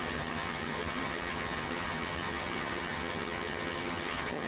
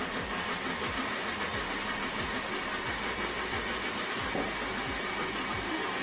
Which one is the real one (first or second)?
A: second